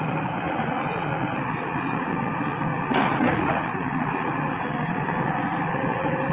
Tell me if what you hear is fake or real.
fake